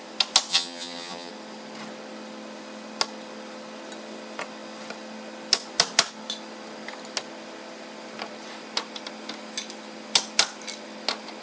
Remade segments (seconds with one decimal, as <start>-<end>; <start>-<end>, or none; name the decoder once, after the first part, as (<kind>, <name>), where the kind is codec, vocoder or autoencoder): 0.5-1.3 (vocoder, HiFi-GAN)